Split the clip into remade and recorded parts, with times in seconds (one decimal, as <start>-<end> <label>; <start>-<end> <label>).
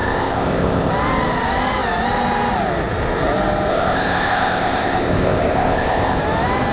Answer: 0.0-0.9 remade; 0.9-3.7 recorded; 3.7-6.2 remade; 6.2-6.7 recorded